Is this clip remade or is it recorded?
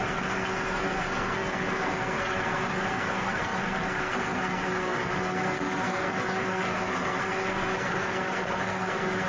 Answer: remade